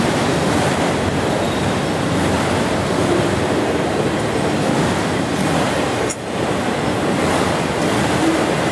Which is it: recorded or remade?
recorded